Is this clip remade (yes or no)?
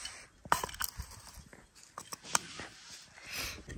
no